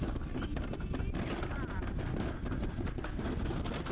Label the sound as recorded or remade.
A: recorded